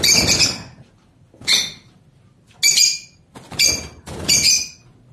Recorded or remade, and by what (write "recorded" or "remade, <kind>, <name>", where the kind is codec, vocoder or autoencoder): recorded